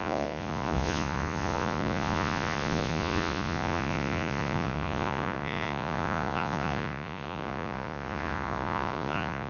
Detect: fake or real fake